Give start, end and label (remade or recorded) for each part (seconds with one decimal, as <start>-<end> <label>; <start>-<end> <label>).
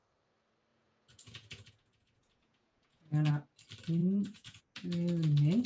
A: 0.0-0.7 recorded; 0.7-3.3 remade; 3.3-4.0 recorded; 4.0-4.6 remade; 4.6-5.7 recorded